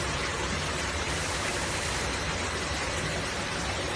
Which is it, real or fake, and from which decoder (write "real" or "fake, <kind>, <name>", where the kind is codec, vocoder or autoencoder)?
real